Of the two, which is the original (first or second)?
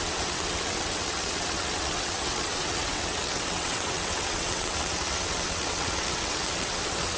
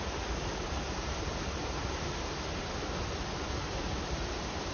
second